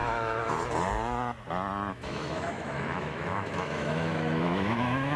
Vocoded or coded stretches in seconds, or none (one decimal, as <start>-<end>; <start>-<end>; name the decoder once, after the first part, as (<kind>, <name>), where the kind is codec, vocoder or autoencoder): 0.0-0.5 (autoencoder, DAC-VAE); 1.9-5.2